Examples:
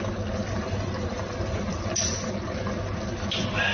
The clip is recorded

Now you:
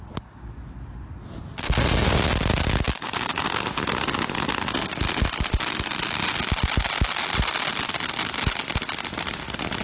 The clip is recorded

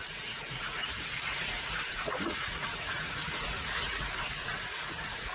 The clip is remade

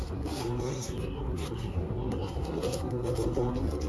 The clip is remade